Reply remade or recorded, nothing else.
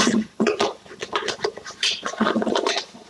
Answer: remade